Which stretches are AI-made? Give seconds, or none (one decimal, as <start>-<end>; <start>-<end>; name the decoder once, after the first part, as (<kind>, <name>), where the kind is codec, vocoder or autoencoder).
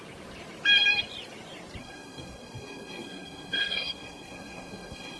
1.8-5.2 (codec, SNAC)